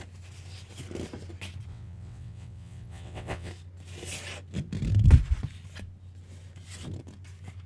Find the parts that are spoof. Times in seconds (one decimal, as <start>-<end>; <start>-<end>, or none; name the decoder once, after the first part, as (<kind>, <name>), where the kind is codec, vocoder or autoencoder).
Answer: 1.7-3.5 (vocoder, WaveNeXt)